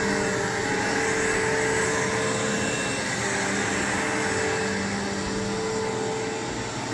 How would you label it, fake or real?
real